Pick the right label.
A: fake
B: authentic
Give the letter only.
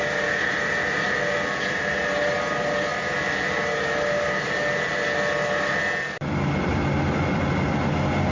B